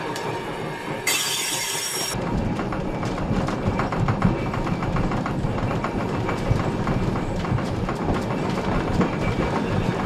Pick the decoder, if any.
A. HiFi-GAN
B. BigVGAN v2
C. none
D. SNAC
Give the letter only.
B